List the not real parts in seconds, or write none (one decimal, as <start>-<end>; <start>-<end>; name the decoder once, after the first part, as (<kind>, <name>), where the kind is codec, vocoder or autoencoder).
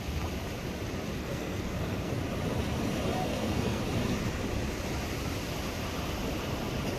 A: 1.2-2.1 (codec, SNAC); 3.2-3.8